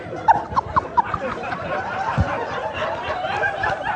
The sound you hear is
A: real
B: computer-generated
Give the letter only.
B